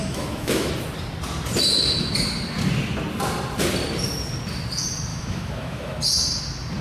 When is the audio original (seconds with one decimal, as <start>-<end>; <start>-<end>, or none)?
0.7-5.1; 6.0-6.8